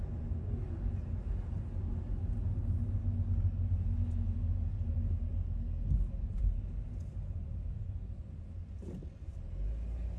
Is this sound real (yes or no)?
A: yes